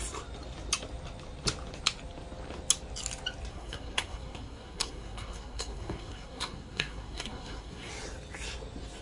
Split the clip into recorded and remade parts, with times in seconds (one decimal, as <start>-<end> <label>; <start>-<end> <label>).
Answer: 0.0-3.5 recorded; 3.5-7.9 remade; 7.9-9.0 recorded